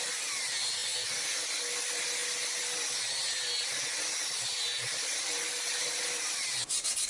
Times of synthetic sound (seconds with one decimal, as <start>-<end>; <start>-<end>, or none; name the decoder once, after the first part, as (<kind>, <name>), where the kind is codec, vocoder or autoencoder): none